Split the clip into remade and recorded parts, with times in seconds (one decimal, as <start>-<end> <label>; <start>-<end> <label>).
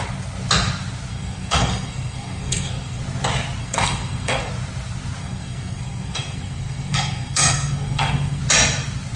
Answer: 0.0-1.1 recorded; 1.1-3.0 remade; 3.0-3.6 recorded; 3.6-4.5 remade; 4.5-5.2 recorded; 5.2-8.4 remade; 8.4-9.2 recorded